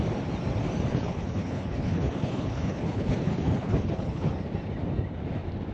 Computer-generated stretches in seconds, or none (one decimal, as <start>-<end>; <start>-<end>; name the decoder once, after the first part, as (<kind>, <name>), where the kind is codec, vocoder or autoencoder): 0.9-4.3 (codec, HILCodec)